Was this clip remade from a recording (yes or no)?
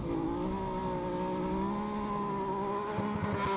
no